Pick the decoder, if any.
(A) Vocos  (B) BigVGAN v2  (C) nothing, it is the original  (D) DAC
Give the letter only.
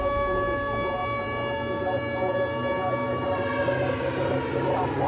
C